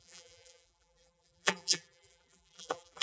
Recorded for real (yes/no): no